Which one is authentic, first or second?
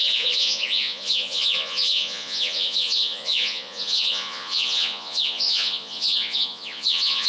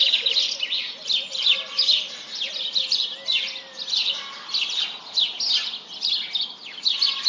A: second